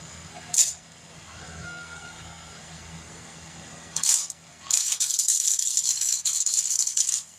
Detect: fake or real fake